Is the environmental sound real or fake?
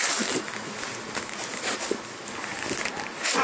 real